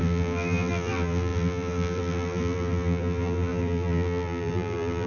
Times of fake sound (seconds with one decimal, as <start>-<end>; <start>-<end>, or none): 0.0-5.1